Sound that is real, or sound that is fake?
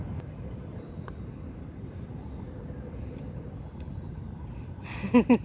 real